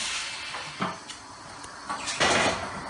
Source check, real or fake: real